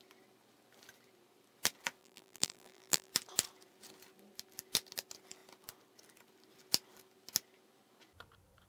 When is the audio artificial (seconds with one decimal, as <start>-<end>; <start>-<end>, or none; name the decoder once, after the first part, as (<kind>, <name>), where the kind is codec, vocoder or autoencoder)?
2.0-3.1 (vocoder, BigVGAN v2)